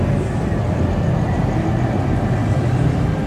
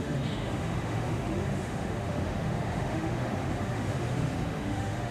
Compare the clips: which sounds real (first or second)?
first